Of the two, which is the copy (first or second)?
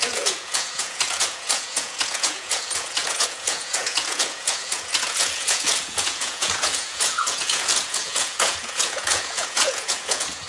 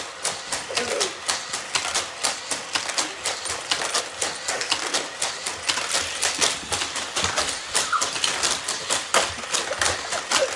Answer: first